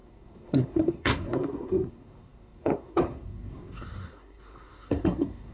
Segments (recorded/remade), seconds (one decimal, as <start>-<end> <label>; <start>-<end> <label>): 0.0-5.5 remade